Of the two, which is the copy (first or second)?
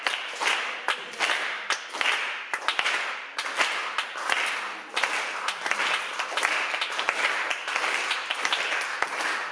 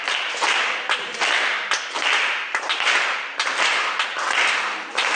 second